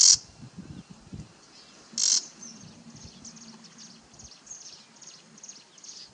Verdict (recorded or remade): recorded